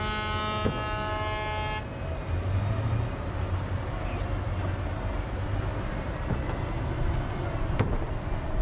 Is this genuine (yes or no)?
yes